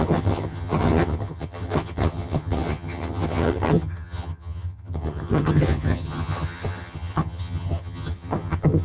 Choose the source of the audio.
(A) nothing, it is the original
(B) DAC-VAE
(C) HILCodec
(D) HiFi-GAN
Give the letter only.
D